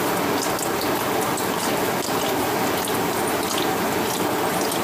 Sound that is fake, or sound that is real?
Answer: real